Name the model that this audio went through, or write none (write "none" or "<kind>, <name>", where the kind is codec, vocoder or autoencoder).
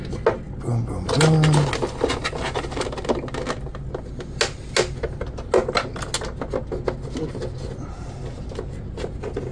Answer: none